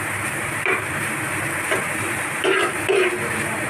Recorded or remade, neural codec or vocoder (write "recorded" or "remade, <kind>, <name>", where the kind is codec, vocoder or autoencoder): recorded